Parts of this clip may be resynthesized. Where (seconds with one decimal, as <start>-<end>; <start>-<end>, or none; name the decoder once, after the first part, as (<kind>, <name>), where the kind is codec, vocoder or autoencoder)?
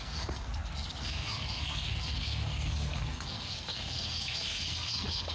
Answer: 0.0-5.3 (codec, SNAC)